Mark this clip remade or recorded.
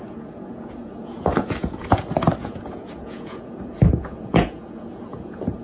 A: remade